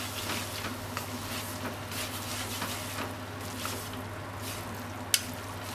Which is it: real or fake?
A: real